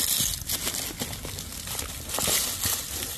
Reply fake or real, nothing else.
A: real